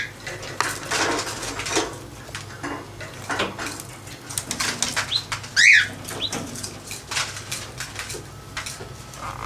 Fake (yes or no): no